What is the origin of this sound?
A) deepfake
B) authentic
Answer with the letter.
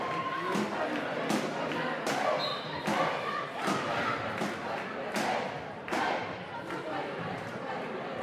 A